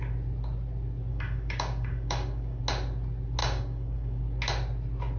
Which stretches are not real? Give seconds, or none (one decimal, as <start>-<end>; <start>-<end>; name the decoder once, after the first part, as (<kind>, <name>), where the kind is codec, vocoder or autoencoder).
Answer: 1.1-2.6 (codec, DAC); 3.4-4.2